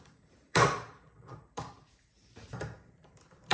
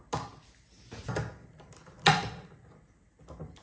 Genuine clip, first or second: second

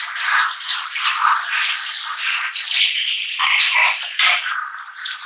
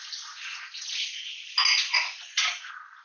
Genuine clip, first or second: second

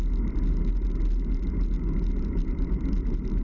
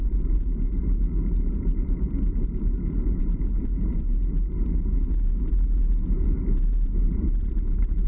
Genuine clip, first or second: first